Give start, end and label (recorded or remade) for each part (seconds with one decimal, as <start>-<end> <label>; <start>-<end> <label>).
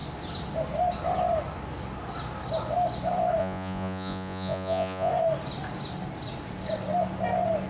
0.0-3.4 recorded; 3.4-5.1 remade; 5.1-7.7 recorded